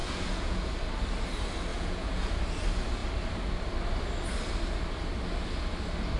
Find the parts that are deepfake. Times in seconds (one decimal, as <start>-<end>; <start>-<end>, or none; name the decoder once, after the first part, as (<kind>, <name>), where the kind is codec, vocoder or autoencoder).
0.0-0.7 (vocoder, Vocos); 1.7-2.3

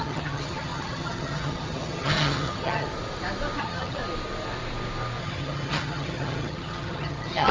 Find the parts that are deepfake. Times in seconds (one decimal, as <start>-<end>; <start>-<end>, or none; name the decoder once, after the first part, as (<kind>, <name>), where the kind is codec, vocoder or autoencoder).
0.0-2.9 (vocoder, HiFi-GAN); 3.6-4.0; 5.2-7.5